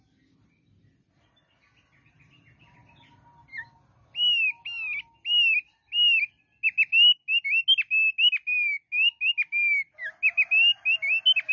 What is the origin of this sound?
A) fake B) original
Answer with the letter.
B